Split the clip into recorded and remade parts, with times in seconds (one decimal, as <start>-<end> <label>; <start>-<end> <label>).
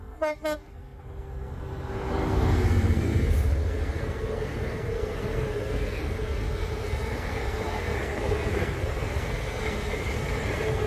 0.0-10.9 remade